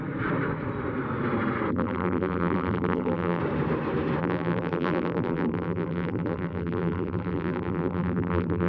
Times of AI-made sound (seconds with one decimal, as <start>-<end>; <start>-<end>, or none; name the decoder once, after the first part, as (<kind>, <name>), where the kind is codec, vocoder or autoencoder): 1.7-3.4 (vocoder, BigVGAN v2); 4.2-8.7